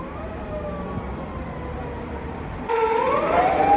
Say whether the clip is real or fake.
real